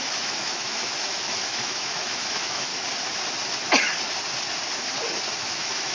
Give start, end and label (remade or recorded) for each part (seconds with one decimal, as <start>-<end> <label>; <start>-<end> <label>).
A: 0.0-2.7 remade; 2.7-5.4 recorded; 5.4-5.9 remade